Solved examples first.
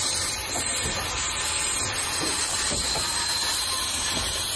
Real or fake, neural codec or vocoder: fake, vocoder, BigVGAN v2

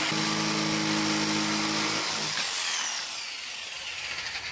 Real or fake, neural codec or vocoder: real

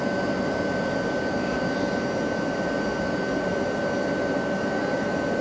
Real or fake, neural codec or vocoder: real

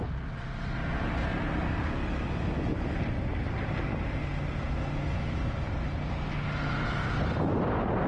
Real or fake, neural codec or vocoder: real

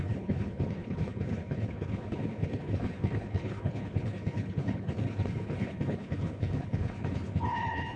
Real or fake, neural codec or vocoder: fake, codec, HILCodec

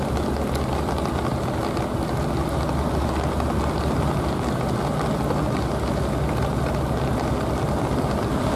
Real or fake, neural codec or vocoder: real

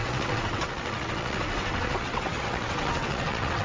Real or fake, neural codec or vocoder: fake, vocoder, WaveNeXt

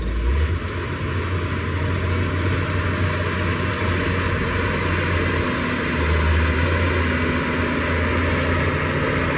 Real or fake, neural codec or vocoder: real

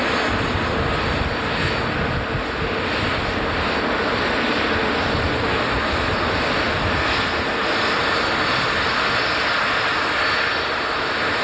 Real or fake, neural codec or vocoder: real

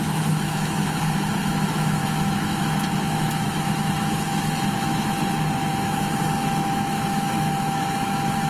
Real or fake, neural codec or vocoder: fake, autoencoder, DAC-VAE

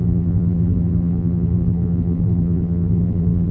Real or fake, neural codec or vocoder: fake, vocoder, BigVGAN v2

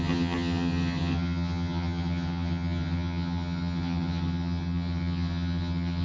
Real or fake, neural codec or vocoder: fake, vocoder, HiFi-GAN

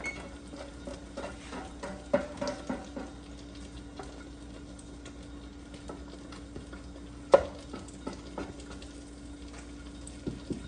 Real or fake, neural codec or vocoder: real